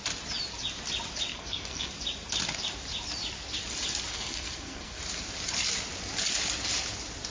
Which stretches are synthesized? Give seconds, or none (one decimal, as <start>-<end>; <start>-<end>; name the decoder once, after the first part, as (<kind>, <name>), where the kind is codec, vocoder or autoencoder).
1.3-1.9 (codec, SNAC); 4.1-5.0